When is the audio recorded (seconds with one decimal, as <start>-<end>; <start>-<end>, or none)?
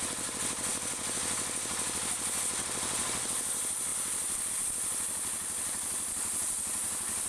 0.0-7.3